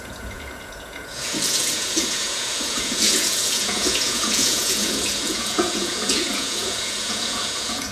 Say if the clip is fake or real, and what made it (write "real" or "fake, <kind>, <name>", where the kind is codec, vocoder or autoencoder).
fake, vocoder, Vocos